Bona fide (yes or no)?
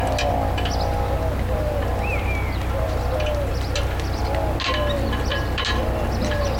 yes